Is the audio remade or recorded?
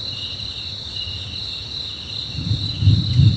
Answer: recorded